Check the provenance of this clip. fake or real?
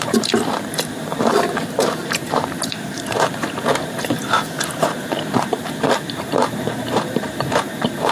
fake